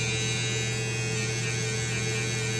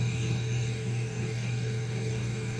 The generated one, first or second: second